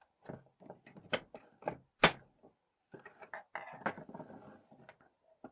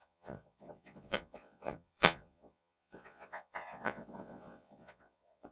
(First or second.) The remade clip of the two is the second